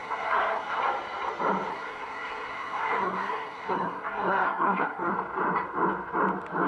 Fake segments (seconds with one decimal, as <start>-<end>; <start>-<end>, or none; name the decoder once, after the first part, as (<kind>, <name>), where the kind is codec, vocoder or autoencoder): 0.0-0.8 (codec, SNAC); 1.7-5.1